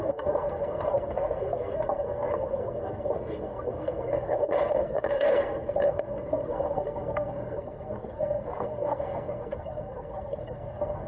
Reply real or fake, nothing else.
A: fake